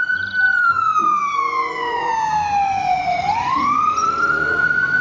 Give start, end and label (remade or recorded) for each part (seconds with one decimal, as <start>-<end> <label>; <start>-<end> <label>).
0.0-2.1 remade; 2.1-2.7 recorded; 2.7-5.0 remade